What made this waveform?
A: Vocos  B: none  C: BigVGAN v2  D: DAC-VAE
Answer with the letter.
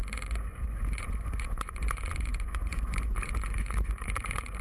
A